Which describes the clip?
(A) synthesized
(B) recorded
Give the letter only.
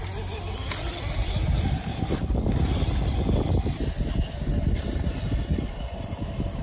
B